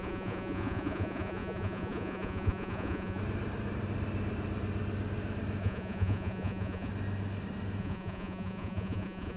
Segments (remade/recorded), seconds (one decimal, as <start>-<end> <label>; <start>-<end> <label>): 0.0-3.2 remade; 3.2-5.6 recorded; 5.6-6.9 remade; 6.9-7.8 recorded; 7.8-9.4 remade